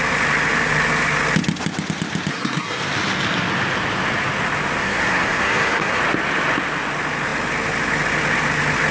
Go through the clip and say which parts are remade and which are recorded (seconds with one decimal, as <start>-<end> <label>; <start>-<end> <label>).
0.0-2.3 recorded; 2.3-2.8 remade; 2.8-4.8 recorded; 4.8-6.0 remade; 6.0-8.9 recorded